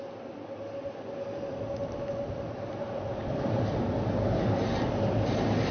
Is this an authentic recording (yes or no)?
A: yes